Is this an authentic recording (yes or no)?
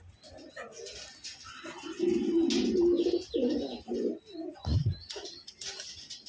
yes